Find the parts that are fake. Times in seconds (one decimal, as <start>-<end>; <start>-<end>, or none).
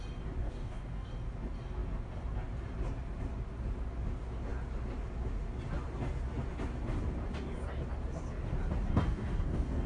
0.4-1.1; 8.9-9.9